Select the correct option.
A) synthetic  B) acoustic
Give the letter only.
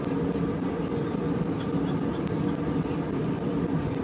B